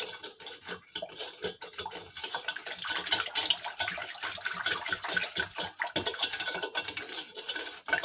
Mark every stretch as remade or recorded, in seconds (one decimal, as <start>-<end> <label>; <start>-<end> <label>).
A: 0.0-8.0 recorded